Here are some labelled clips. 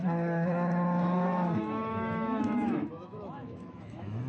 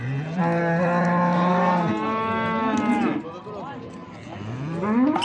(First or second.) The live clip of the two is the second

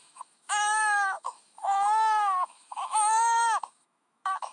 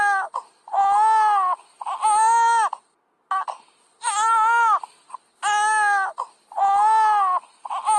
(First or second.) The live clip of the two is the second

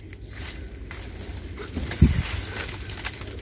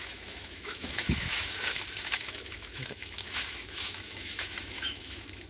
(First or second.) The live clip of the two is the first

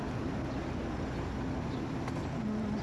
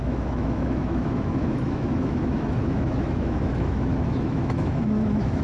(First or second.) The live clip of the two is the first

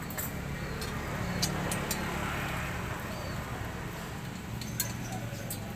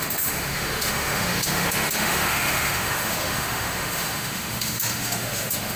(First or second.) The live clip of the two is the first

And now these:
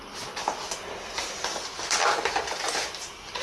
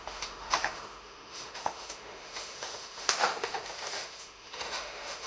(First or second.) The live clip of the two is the first